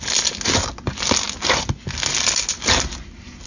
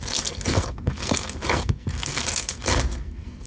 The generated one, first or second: second